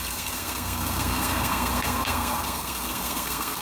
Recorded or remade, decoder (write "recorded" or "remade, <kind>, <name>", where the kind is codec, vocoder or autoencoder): remade, codec, SNAC